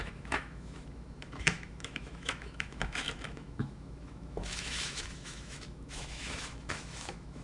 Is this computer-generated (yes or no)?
yes